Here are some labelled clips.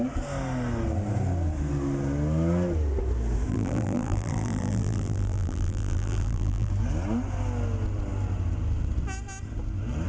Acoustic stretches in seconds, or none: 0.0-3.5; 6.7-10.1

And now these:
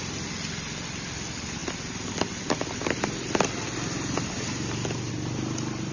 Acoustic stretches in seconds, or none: 0.0-5.9

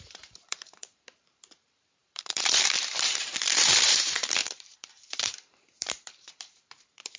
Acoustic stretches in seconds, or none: none

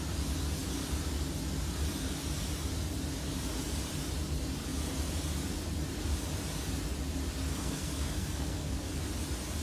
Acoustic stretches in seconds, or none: 0.0-7.5; 9.0-9.6

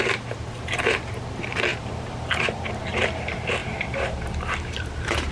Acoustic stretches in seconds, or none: none

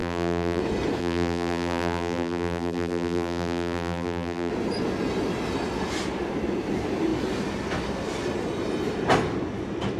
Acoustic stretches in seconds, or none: 0.6-1.0; 4.5-10.0